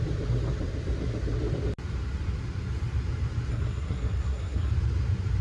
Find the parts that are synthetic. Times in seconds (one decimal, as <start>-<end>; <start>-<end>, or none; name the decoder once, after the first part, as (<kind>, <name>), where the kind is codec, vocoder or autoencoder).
3.5-4.7 (codec, SNAC)